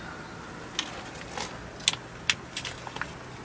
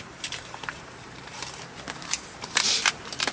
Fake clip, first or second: second